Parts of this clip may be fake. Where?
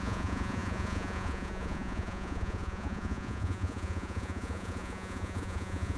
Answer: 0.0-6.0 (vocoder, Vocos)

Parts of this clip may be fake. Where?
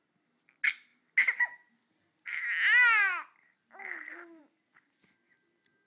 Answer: none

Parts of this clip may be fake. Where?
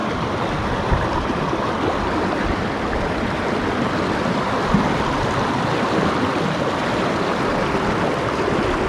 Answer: none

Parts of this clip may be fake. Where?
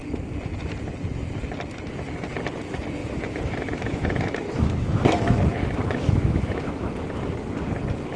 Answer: 3.0-6.9 (autoencoder, DAC-VAE)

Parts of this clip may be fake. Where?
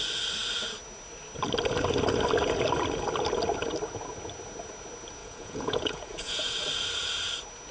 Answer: 5.2-6.6 (vocoder, Vocos)